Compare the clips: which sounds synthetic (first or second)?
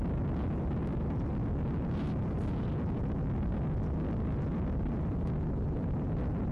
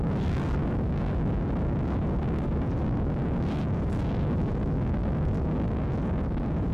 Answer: second